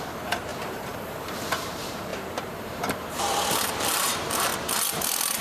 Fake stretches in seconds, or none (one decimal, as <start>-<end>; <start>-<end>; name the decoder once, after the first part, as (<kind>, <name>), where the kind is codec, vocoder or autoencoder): 0.0-4.5 (vocoder, BigVGAN v2); 5.0-5.4